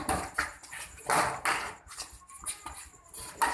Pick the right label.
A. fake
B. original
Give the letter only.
B